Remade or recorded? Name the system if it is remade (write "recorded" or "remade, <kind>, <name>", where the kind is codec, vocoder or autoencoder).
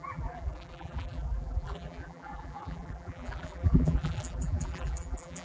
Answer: remade, vocoder, BigVGAN v2